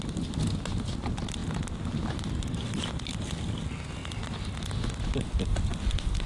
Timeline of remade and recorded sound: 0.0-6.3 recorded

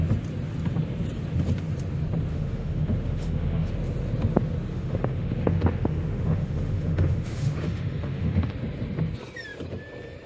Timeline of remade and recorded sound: 0.0-2.3 recorded; 2.3-3.7 remade; 3.7-4.7 recorded; 4.7-8.5 remade; 8.5-10.3 recorded

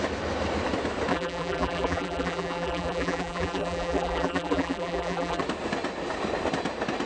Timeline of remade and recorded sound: 0.0-1.1 recorded; 1.1-5.4 remade; 5.4-7.1 recorded

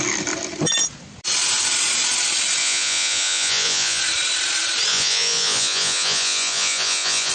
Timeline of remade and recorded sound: 0.0-2.6 recorded; 2.6-4.0 remade; 4.0-4.9 recorded; 4.9-7.3 remade

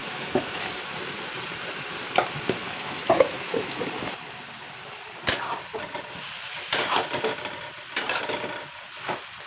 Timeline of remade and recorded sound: 0.0-0.6 remade; 0.6-2.6 recorded; 2.6-3.7 remade; 3.7-9.5 recorded

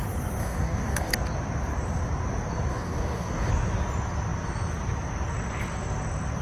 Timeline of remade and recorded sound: 0.0-0.4 recorded; 0.4-1.1 remade; 1.1-2.7 recorded; 2.7-3.5 remade; 3.5-6.4 recorded